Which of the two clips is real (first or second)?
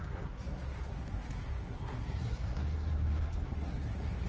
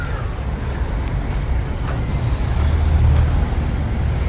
second